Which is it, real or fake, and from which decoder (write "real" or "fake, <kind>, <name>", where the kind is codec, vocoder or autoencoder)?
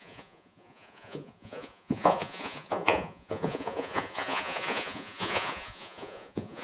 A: fake, vocoder, Vocos